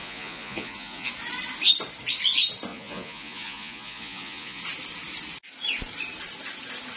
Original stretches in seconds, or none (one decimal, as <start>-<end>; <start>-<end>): 1.1-2.7; 4.6-7.0